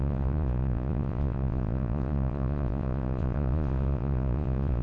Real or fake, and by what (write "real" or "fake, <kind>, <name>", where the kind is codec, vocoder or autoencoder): fake, vocoder, Vocos